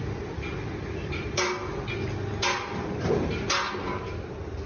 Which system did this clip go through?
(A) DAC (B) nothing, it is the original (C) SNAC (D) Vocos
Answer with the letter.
B